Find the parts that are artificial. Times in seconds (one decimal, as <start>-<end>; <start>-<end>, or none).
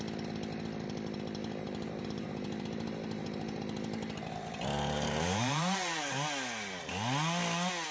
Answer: 1.4-6.1